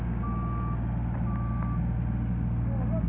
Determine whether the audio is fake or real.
real